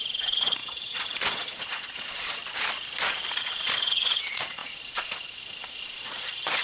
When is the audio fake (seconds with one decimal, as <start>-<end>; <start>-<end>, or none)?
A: 0.0-2.4; 3.3-6.6